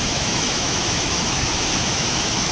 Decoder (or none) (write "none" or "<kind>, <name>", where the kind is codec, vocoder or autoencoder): autoencoder, DAC-VAE